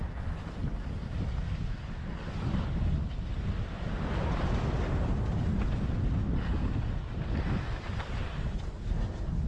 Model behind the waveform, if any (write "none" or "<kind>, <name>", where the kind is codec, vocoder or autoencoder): none